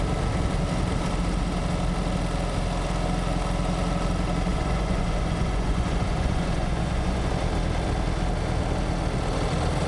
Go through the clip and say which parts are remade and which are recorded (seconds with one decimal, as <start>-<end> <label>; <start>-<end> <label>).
0.0-4.5 recorded; 4.5-7.3 remade; 7.3-9.9 recorded